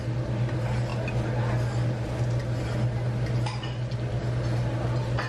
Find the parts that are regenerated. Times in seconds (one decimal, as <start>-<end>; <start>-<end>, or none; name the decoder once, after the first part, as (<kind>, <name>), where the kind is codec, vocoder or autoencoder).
none